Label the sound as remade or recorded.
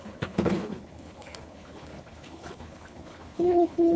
remade